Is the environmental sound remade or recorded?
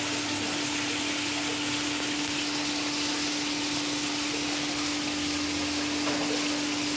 recorded